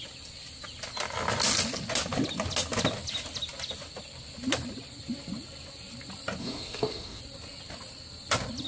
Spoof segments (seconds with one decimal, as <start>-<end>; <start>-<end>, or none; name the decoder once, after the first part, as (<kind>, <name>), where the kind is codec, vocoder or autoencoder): 6.4-7.2 (codec, SNAC)